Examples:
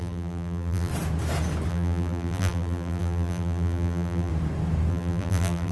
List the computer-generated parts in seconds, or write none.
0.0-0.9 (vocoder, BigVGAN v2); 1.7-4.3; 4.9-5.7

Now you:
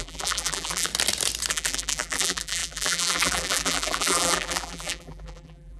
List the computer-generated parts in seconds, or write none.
0.0-0.9 (vocoder, BigVGAN v2); 1.5-5.8

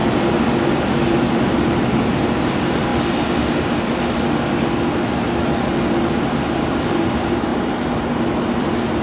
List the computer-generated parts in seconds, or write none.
1.1-2.9 (vocoder, BigVGAN v2); 6.6-9.0

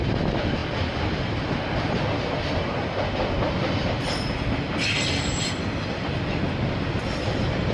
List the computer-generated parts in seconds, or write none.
none